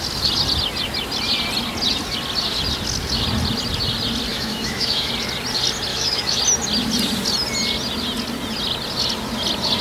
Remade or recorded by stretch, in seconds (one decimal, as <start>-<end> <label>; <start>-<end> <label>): 0.0-4.3 recorded; 4.3-5.1 remade; 5.1-5.9 recorded; 5.9-6.4 remade; 6.4-9.8 recorded